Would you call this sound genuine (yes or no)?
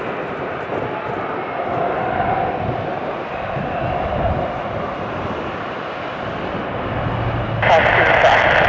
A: yes